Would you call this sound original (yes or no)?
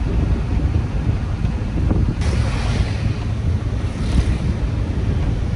yes